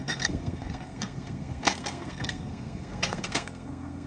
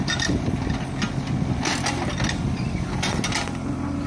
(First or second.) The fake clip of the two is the first